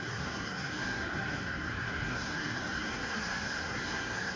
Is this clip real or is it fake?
fake